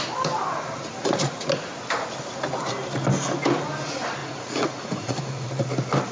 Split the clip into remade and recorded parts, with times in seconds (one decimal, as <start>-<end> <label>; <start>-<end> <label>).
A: 0.0-4.2 recorded; 4.2-5.5 remade; 5.5-6.1 recorded